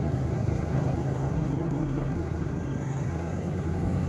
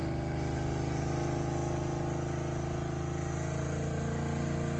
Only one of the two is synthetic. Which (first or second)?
first